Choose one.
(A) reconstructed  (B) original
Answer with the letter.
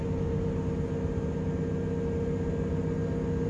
B